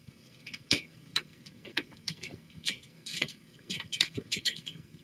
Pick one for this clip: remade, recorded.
remade